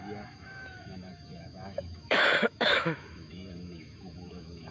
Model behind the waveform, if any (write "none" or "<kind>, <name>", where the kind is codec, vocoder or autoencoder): autoencoder, DAC-VAE